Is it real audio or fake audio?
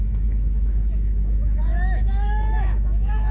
fake